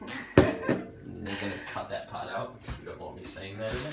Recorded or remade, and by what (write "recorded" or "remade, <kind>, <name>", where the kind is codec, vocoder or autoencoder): recorded